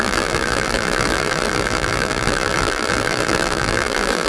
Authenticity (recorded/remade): remade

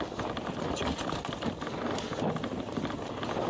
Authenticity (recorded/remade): recorded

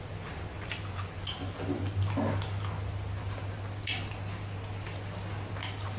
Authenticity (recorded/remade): recorded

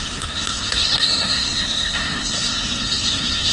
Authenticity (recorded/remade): remade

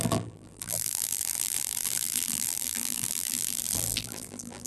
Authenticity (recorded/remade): remade